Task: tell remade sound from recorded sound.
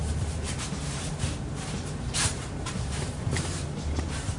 remade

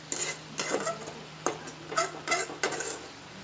recorded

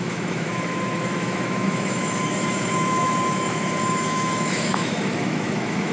remade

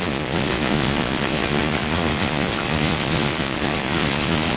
remade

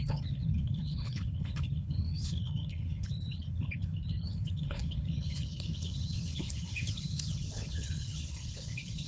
remade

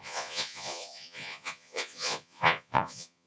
remade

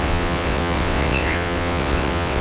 remade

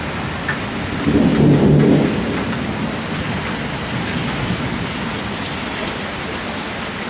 recorded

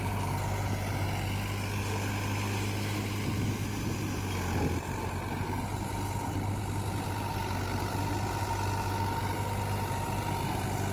recorded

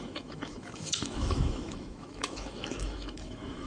remade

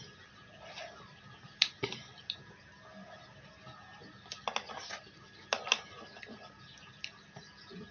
recorded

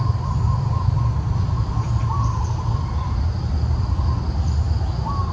recorded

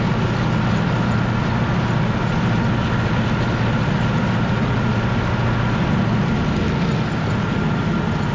recorded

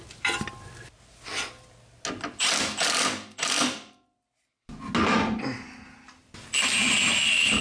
recorded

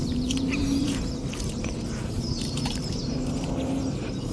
remade